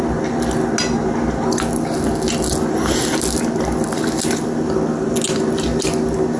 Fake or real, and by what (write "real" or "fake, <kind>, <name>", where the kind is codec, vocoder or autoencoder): real